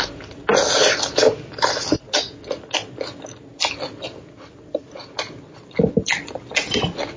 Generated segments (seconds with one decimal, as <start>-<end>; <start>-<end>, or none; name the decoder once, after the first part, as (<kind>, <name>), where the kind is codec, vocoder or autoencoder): 0.5-2.0 (vocoder, BigVGAN v2)